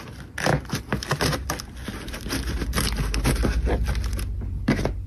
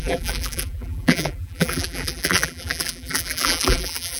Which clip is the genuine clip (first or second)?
first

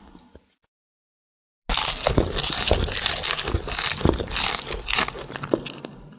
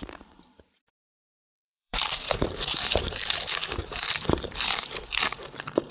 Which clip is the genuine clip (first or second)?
first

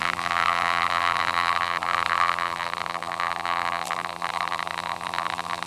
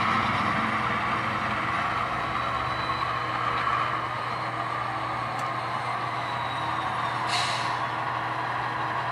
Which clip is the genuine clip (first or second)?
second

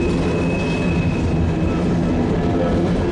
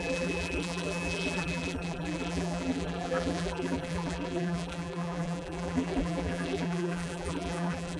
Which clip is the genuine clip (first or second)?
first